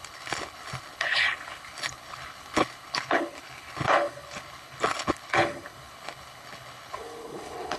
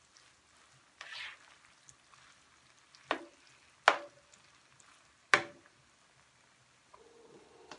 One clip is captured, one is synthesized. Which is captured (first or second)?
second